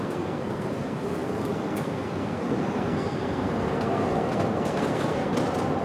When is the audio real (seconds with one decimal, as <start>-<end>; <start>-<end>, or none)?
5.3-5.8

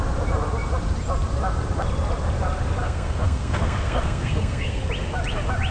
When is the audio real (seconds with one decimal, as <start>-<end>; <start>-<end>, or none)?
0.0-2.8; 4.9-5.7

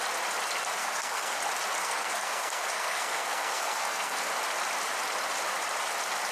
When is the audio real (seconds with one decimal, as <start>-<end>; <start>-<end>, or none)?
0.0-0.8; 1.4-1.8; 4.3-6.3

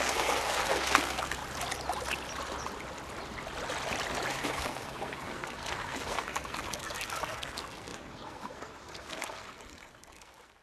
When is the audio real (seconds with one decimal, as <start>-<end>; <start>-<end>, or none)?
1.4-4.3

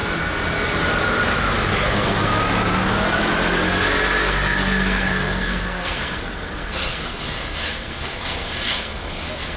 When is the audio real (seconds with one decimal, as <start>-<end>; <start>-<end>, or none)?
0.0-1.7; 2.4-4.2

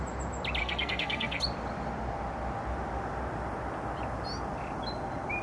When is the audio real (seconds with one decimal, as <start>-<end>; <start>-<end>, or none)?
0.0-0.6; 1.4-5.4